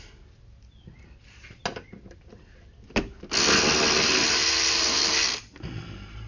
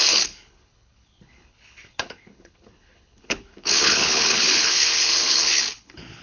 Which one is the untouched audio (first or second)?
first